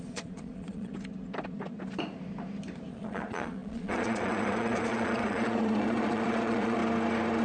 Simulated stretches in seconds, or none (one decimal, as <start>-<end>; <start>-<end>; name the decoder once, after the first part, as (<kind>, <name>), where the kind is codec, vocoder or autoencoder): 0.0-0.9 (vocoder, Vocos); 2.9-6.8